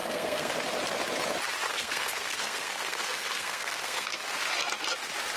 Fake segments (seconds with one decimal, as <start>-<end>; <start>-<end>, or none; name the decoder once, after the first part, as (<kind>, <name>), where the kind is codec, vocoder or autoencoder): 0.0-0.5 (codec, SNAC); 1.7-4.2